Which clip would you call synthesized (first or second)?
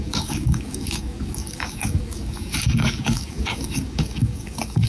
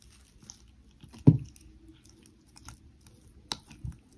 first